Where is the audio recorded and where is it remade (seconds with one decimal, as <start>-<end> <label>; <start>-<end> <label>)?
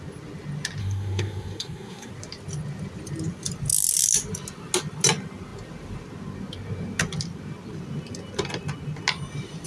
0.0-0.8 recorded; 0.8-2.1 remade; 2.1-9.7 recorded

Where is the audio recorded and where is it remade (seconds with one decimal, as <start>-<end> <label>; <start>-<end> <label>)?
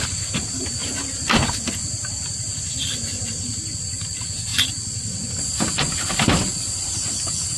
0.0-7.6 recorded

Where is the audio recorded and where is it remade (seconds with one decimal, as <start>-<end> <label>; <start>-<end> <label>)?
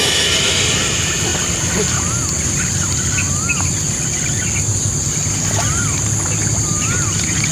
0.0-7.5 recorded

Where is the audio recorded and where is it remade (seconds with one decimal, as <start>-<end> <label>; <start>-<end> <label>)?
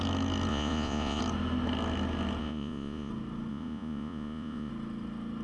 0.0-0.5 recorded; 0.5-1.2 remade; 1.2-2.4 recorded; 2.4-3.1 remade; 3.1-3.5 recorded; 3.5-4.7 remade; 4.7-5.4 recorded